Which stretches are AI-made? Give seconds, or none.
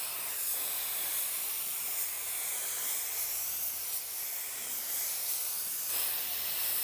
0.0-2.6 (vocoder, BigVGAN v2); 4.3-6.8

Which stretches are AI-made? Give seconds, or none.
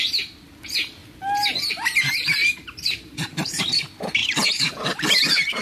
1.0-2.0 (vocoder, BigVGAN v2); 2.4-3.6; 4.2-5.6